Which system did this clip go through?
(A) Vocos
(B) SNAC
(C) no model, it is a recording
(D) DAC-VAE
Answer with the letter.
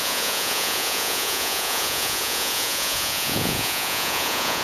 A